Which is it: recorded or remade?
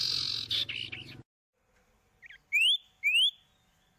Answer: recorded